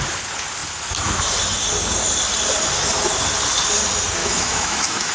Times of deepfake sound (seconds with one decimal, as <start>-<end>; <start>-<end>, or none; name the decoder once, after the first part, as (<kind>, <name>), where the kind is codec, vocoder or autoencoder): 4.2-5.1 (autoencoder, DAC-VAE)